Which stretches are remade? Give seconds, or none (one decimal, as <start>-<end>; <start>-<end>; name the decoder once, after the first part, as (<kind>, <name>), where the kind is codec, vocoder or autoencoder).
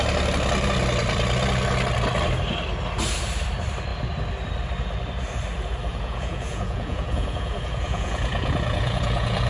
5.9-9.5 (vocoder, Vocos)